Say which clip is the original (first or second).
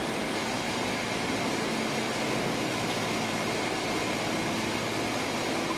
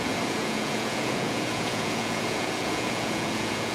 first